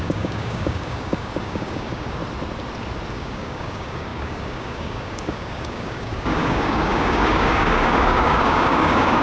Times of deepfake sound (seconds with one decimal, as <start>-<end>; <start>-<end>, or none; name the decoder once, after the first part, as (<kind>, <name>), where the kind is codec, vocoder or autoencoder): 0.0-2.2 (codec, DAC); 3.1-9.2